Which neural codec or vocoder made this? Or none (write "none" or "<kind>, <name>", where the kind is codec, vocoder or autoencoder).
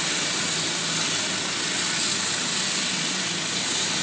none